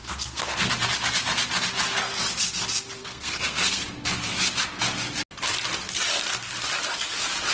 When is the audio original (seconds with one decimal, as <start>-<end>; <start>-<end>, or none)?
0.7-3.0; 3.8-7.5